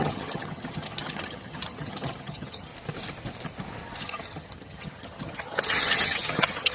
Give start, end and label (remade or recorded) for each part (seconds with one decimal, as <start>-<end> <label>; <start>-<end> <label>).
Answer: 0.0-2.7 remade; 2.7-4.0 recorded; 4.0-6.7 remade